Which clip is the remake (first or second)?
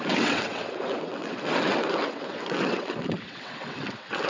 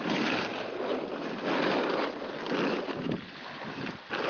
first